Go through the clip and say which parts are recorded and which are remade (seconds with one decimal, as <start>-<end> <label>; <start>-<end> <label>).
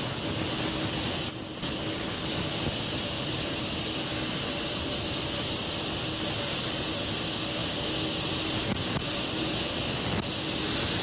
0.0-11.0 recorded